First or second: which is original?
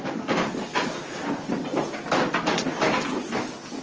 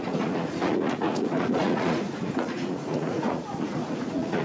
first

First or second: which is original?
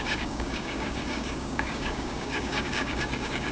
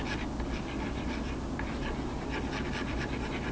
second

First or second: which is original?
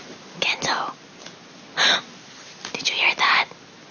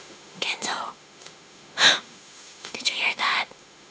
first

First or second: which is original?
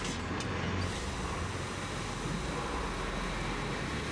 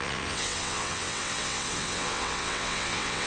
first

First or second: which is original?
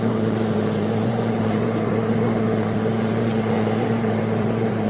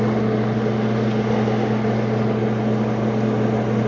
second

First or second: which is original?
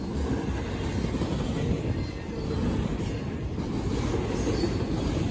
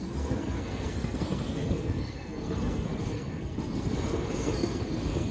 first